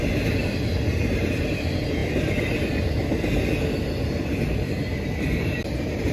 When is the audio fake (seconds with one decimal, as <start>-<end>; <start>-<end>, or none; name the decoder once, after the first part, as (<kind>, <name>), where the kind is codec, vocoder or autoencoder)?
none